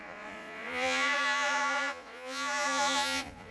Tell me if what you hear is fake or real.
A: fake